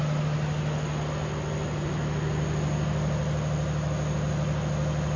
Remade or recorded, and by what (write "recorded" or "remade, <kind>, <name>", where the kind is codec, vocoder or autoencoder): recorded